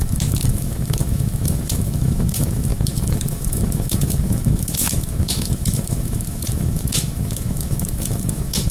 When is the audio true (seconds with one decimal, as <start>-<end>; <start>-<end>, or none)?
none